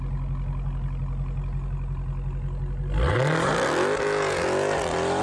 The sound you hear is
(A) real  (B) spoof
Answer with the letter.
A